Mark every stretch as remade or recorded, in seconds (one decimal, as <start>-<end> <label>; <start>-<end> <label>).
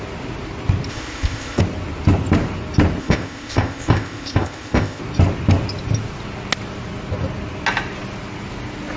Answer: 0.0-0.9 recorded; 0.9-1.6 remade; 1.6-3.0 recorded; 3.0-5.0 remade; 5.0-9.0 recorded